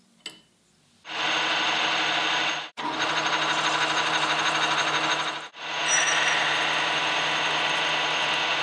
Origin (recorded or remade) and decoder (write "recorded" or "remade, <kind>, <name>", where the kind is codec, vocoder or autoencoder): recorded